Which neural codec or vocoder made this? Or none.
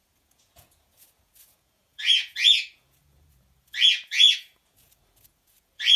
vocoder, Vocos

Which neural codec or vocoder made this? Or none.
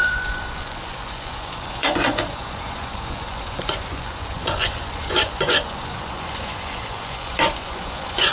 vocoder, Vocos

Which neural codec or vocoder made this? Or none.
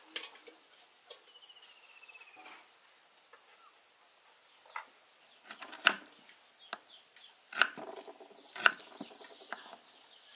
none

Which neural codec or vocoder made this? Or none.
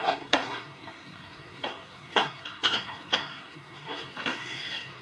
codec, SNAC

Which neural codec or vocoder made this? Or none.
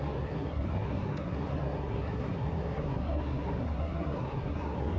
codec, SNAC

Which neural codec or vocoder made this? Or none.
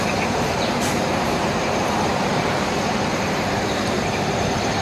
vocoder, BigVGAN v2